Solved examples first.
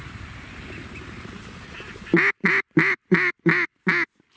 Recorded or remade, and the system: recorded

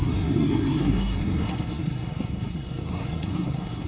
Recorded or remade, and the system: remade, codec, SNAC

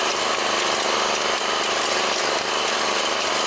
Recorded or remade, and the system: recorded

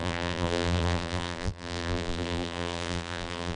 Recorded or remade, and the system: remade, vocoder, BigVGAN v2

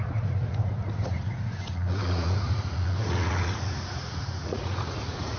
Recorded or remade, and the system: remade, vocoder, Vocos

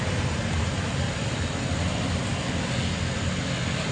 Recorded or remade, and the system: recorded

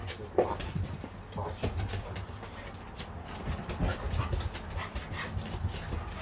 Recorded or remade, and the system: recorded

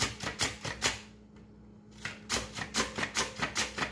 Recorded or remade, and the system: recorded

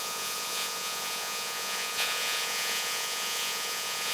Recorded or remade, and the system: remade, vocoder, Vocos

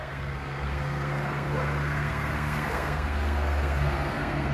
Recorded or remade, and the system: remade, codec, SNAC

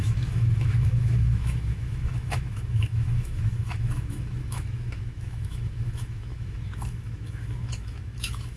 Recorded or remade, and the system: remade, autoencoder, DAC-VAE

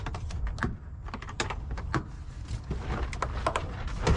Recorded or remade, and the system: recorded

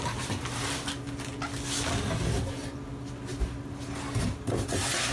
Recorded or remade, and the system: recorded